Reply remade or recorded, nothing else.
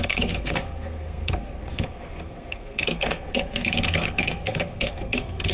remade